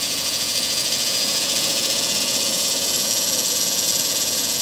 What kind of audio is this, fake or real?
fake